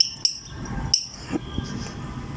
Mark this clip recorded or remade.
recorded